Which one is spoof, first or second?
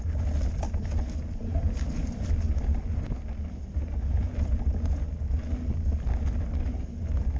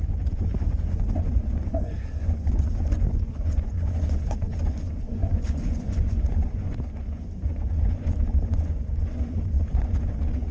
second